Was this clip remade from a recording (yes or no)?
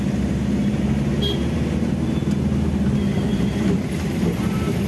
no